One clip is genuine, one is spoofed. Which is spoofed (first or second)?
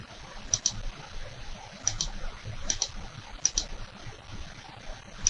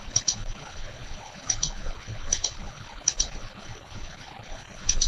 second